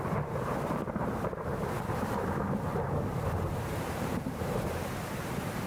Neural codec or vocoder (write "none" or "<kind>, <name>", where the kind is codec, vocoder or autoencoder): vocoder, BigVGAN v2